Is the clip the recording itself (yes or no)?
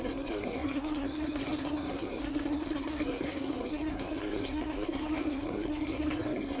no